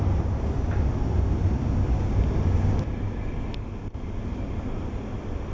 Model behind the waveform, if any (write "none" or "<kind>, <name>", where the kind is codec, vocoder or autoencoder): none